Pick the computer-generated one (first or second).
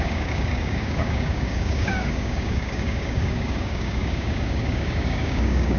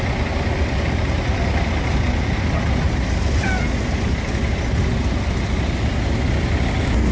first